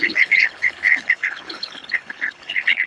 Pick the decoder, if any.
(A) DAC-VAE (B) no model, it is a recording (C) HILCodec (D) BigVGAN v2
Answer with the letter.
C